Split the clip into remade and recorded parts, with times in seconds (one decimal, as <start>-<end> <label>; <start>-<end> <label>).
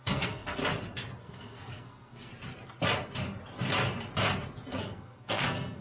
0.0-0.6 remade; 0.6-1.2 recorded; 1.2-2.3 remade; 2.3-4.8 recorded; 4.8-5.8 remade